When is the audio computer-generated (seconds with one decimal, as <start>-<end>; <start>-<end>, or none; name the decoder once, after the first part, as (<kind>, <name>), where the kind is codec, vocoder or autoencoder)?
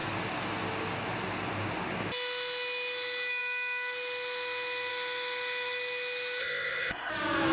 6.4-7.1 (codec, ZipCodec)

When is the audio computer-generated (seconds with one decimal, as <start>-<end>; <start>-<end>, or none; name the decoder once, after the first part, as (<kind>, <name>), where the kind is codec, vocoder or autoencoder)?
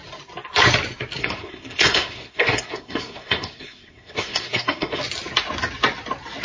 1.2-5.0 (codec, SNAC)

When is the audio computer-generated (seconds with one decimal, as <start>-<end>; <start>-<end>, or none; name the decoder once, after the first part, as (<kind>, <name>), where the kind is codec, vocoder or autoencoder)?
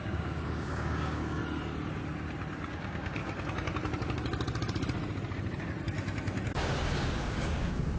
0.0-1.4 (codec, DAC); 2.7-3.2; 6.5-8.0